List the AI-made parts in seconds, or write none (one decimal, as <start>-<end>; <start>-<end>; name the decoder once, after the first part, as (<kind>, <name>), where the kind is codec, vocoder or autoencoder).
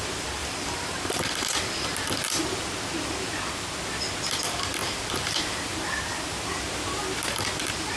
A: 0.4-1.7 (vocoder, BigVGAN v2); 4.8-6.6